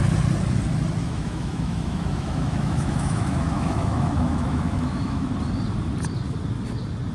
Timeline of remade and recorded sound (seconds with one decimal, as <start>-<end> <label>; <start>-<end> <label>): 0.0-1.0 recorded; 1.0-5.3 remade; 5.3-7.1 recorded